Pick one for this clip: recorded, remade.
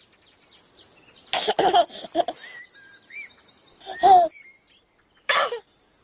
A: recorded